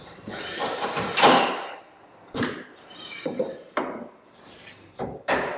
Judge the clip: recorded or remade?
remade